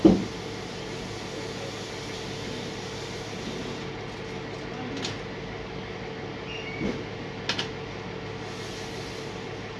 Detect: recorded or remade recorded